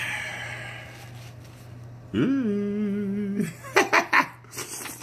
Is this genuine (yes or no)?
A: yes